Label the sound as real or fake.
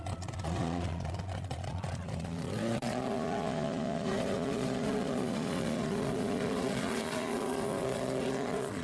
fake